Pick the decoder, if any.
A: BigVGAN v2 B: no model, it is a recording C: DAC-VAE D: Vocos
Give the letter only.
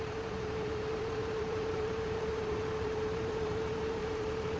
A